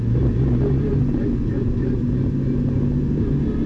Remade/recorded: recorded